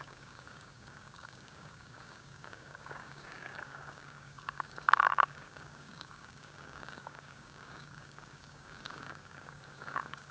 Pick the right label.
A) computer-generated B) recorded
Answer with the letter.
A